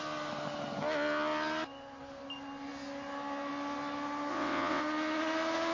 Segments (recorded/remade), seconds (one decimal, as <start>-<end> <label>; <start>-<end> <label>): 0.0-4.3 recorded; 4.3-4.8 remade; 4.8-5.7 recorded